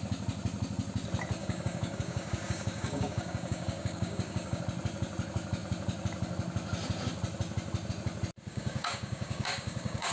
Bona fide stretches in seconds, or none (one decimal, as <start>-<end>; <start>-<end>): 0.0-1.4; 4.6-8.5